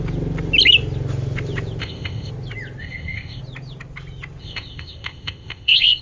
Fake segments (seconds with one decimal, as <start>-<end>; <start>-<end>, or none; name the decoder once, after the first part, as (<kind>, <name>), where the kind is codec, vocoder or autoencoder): 1.8-2.3 (codec, ZipCodec); 2.8-3.4; 4.4-6.0